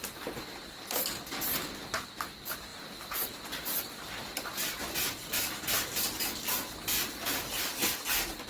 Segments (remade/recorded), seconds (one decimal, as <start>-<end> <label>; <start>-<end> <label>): 0.0-8.5 recorded